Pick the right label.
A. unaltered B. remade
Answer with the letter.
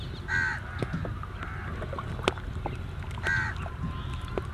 A